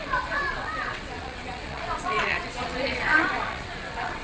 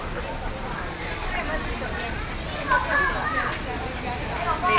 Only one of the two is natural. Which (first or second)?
second